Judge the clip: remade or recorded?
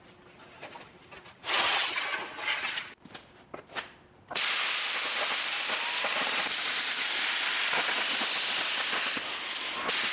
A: recorded